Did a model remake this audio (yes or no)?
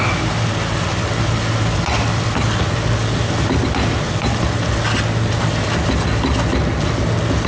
no